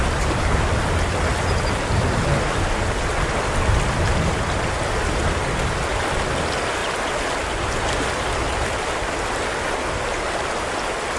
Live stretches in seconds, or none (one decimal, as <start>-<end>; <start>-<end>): 0.0-11.2